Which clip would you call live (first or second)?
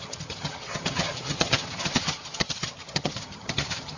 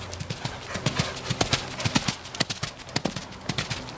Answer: second